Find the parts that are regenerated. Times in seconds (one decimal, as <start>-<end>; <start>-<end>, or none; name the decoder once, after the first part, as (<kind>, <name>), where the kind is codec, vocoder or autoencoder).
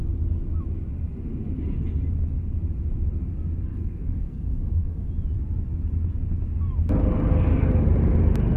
3.7-5.1 (codec, SNAC)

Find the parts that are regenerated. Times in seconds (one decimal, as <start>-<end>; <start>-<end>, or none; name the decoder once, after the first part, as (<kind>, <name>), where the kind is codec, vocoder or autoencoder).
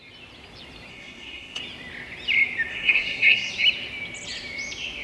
0.9-1.6 (codec, SNAC); 2.7-3.5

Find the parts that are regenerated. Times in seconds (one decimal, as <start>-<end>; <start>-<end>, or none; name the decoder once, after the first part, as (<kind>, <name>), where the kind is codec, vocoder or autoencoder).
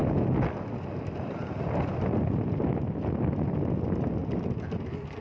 none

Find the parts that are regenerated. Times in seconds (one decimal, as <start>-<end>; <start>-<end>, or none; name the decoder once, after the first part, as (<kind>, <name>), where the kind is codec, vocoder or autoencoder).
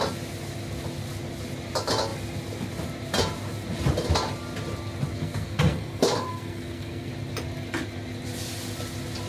5.1-7.1 (codec, SNAC)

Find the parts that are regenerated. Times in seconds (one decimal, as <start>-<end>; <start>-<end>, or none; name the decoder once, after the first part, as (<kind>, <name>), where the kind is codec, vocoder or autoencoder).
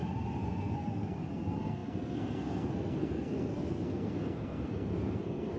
0.6-5.6 (codec, SNAC)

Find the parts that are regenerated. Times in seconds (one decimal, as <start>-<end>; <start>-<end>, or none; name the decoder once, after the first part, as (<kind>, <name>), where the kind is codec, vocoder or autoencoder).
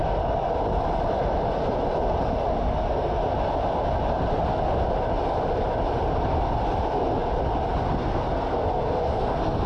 2.5-3.2 (codec, SNAC); 8.0-9.7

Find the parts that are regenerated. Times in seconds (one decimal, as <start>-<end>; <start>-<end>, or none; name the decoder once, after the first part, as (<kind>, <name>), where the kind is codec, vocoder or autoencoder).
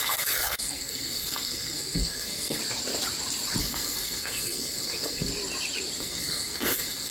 0.0-2.6 (codec, SNAC); 3.6-5.3; 6.0-7.1